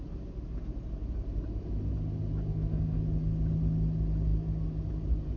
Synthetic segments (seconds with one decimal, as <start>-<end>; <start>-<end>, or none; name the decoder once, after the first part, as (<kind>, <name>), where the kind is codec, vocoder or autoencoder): 2.5-3.0 (codec, SNAC)

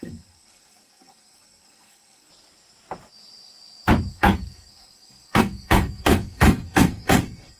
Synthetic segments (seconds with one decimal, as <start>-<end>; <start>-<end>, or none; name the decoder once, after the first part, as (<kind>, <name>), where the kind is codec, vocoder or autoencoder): 0.0-2.3 (codec, SNAC); 4.1-7.6

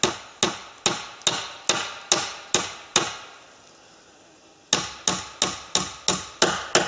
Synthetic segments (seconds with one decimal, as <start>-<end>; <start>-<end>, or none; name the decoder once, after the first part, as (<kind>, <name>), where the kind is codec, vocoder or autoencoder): none

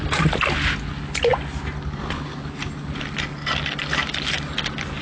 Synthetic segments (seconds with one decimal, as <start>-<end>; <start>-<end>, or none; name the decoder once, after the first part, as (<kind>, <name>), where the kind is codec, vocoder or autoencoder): none

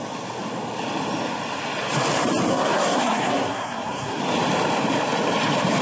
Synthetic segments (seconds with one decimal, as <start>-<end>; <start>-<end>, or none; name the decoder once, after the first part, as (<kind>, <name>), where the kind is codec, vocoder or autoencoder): 2.5-4.2 (codec, SNAC)

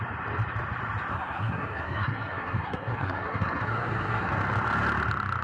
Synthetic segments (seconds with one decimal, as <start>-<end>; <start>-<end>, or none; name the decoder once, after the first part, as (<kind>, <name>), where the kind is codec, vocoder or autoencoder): 1.1-4.3 (codec, SNAC)